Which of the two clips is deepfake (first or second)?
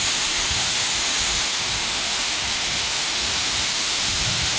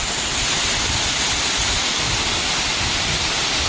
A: first